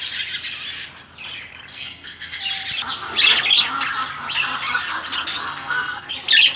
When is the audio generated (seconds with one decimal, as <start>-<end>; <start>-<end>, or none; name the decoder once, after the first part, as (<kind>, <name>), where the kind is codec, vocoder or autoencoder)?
1.7-2.4 (codec, SNAC); 5.4-6.1